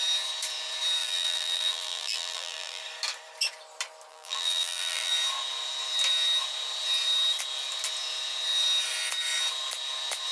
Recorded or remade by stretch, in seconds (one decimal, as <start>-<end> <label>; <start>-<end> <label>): 0.0-1.0 recorded; 1.0-2.8 remade; 2.8-4.1 recorded; 4.1-5.1 remade; 5.1-10.3 recorded